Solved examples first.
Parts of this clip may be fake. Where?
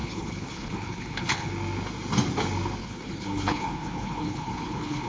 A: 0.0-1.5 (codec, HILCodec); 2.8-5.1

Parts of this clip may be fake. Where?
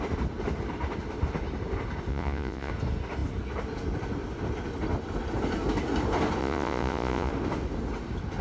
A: 2.1-2.7 (vocoder, Vocos); 6.4-7.3